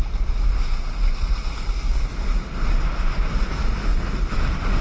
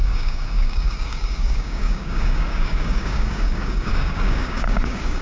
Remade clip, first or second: second